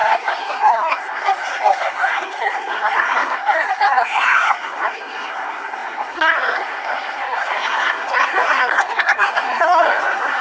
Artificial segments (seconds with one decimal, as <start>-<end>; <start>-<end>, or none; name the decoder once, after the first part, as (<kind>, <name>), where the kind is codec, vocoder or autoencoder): 0.0-10.4 (codec, SNAC)